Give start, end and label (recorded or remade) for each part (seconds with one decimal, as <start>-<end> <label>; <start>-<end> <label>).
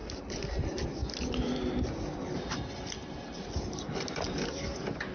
0.0-5.1 recorded